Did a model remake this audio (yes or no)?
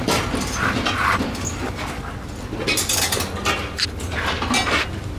no